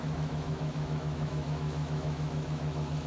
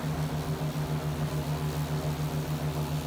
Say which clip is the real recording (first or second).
second